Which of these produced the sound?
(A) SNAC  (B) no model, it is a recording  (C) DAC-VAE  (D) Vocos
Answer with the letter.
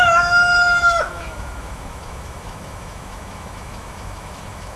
C